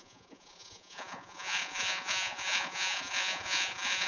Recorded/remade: remade